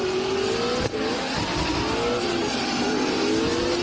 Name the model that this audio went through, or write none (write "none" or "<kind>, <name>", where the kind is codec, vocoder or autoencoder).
none